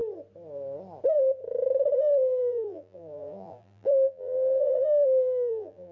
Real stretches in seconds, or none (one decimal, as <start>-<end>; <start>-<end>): 0.0-2.4